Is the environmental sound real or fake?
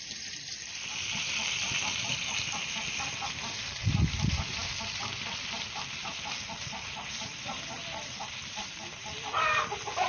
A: fake